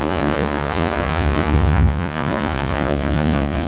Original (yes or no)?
no